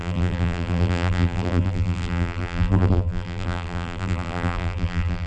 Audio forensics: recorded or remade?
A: remade